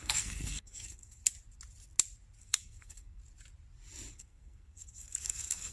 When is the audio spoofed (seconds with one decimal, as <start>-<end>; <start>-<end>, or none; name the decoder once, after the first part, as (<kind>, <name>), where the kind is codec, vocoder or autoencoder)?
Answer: 0.0-1.2 (codec, SNAC); 2.4-3.2; 4.1-5.7

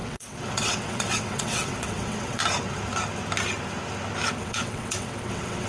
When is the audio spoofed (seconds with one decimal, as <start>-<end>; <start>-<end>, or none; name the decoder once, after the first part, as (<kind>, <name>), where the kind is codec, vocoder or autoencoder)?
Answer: 0.0-2.4 (vocoder, WaveNeXt); 4.4-5.7

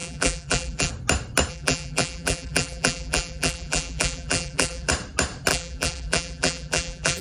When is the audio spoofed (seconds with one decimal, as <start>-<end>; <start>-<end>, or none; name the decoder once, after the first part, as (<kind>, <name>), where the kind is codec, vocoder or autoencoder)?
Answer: 0.0-0.9 (vocoder, BigVGAN v2); 1.5-4.9; 5.5-7.2